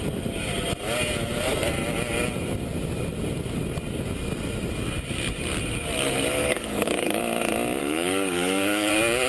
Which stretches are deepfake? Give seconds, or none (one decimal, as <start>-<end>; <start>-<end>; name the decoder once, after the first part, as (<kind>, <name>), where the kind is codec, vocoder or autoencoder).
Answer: 6.4-7.2 (codec, DAC); 7.8-8.9